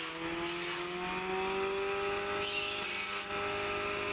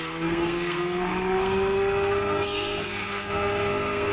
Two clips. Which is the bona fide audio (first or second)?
first